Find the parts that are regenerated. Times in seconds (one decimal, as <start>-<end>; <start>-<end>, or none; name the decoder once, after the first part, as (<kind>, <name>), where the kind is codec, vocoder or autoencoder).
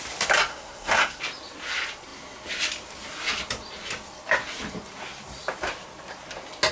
0.5-1.2 (codec, SNAC)